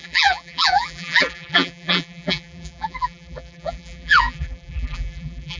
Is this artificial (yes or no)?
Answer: yes